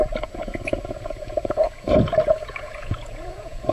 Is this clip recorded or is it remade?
remade